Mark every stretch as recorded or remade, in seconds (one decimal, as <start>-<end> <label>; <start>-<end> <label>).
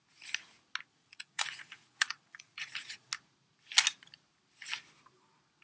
0.0-0.9 recorded; 0.9-3.1 remade; 3.1-5.6 recorded